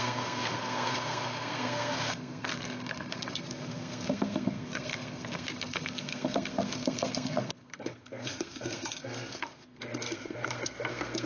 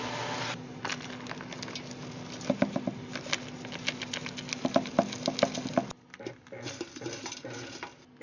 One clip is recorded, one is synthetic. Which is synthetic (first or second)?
first